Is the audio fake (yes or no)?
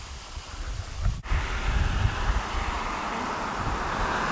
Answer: no